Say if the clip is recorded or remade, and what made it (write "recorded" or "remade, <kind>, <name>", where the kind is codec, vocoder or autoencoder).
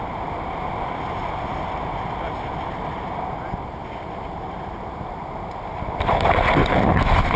recorded